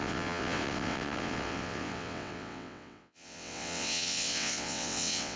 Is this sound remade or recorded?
remade